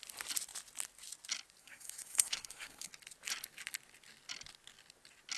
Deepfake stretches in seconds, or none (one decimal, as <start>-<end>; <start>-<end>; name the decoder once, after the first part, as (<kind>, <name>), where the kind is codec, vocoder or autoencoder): 1.6-2.9 (codec, SNAC)